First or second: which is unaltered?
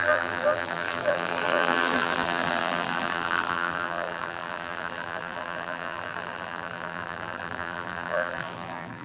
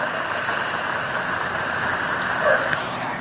second